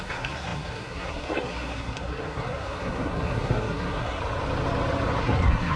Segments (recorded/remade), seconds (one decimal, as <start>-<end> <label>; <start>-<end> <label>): 0.0-4.2 remade; 4.2-5.2 recorded; 5.2-5.8 remade